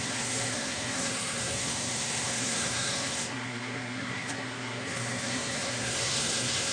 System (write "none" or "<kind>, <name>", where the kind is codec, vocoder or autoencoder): codec, SNAC